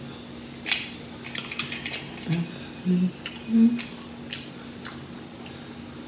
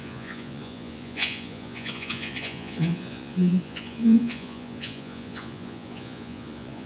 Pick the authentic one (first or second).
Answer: first